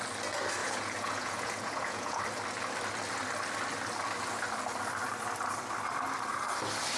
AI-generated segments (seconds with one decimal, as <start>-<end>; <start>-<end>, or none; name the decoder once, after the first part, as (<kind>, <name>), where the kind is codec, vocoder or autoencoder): 0.6-2.2 (vocoder, Vocos)